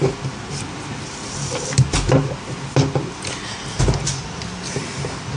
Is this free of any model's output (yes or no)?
yes